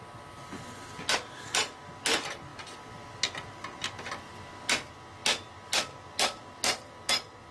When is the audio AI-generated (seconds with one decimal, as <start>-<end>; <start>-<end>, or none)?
none